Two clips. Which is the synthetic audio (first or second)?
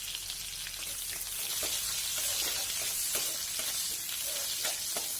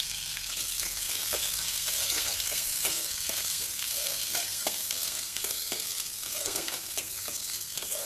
second